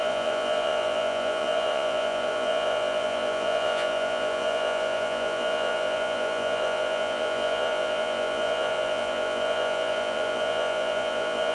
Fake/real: fake